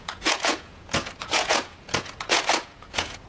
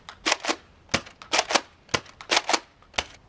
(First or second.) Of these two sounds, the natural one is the second